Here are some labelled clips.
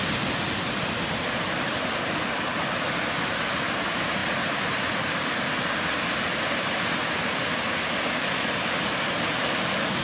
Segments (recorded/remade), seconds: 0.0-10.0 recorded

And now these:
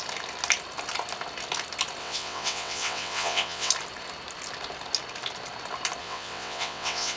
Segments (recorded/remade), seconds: 0.0-2.0 recorded; 2.0-3.7 remade; 3.7-6.0 recorded; 6.0-7.2 remade

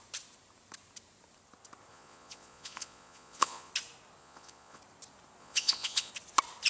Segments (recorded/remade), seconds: 0.0-1.9 recorded; 1.9-3.7 remade; 3.7-4.2 recorded; 4.2-4.8 remade; 4.8-5.4 recorded; 5.4-6.1 remade; 6.1-6.7 recorded

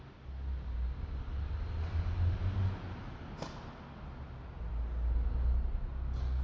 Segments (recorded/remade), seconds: 0.0-6.4 recorded

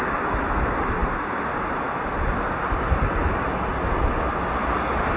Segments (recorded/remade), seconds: 0.0-5.2 recorded